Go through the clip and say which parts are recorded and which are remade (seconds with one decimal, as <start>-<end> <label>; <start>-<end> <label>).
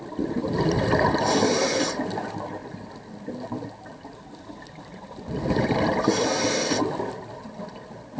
0.0-8.2 recorded